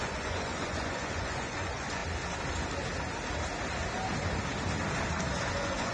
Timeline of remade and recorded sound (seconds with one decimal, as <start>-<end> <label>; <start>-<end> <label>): 0.0-2.0 remade; 2.0-5.5 recorded; 5.5-5.9 remade